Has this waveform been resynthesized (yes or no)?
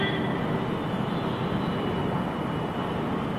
no